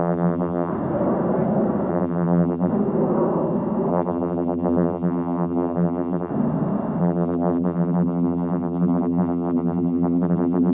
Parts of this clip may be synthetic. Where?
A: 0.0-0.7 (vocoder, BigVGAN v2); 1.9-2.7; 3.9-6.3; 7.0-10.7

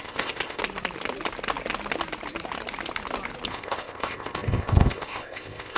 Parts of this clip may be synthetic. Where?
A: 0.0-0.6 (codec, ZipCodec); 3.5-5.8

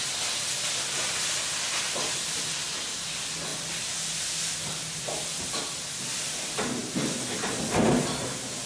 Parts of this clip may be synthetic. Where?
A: none

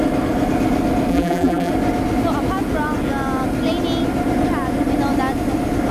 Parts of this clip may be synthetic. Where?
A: 1.1-1.7 (vocoder, BigVGAN v2)

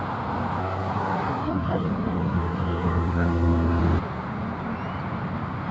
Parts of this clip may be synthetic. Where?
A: 0.6-3.8 (codec, SNAC)

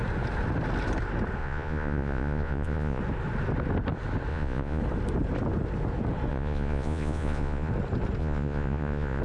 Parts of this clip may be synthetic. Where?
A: 1.4-3.0 (vocoder, Vocos); 4.3-4.8; 6.3-7.7; 8.2-9.2

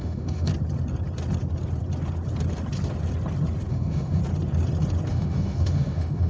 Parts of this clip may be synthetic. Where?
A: 0.0-0.5 (autoencoder, DAC-VAE); 3.7-4.2; 5.1-6.3

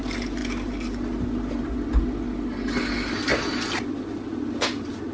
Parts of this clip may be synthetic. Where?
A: none